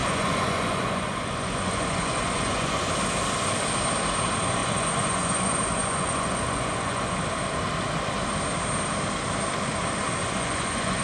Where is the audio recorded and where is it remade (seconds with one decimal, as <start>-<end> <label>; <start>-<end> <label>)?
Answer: 0.0-2.9 remade; 2.9-4.6 recorded; 4.6-7.2 remade; 7.2-10.2 recorded; 10.2-11.0 remade